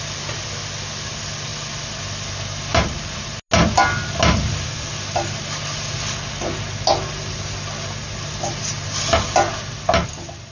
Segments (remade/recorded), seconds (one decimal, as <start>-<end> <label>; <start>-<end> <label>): 0.0-10.5 recorded